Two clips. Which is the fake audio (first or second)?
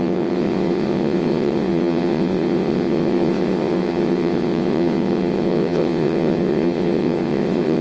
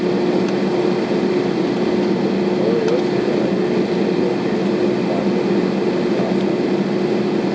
first